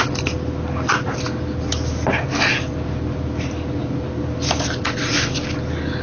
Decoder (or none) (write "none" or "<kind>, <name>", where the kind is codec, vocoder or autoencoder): none